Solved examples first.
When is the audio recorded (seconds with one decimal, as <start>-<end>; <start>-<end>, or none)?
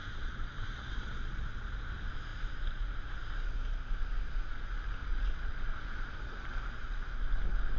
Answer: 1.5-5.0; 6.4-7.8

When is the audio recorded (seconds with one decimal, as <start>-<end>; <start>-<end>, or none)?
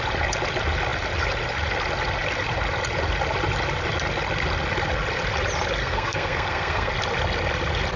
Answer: 0.0-5.8; 6.9-8.0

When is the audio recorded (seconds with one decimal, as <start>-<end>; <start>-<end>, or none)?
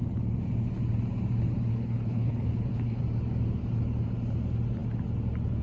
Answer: 0.0-1.7; 3.0-5.6